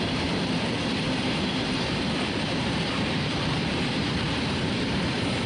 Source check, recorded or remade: remade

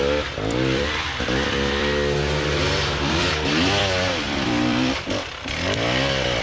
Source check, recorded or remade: remade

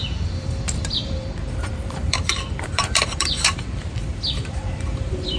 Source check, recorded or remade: remade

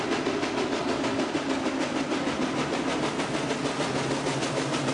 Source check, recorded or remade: recorded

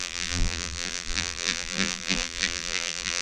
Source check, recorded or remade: remade